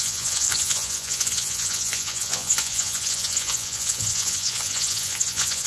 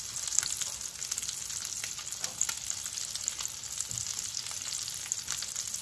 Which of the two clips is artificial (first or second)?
first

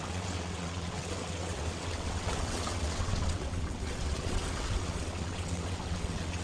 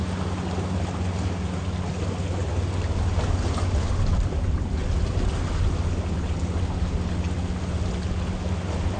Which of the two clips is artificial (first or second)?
first